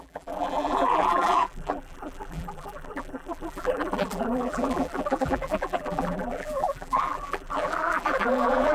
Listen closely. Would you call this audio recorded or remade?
remade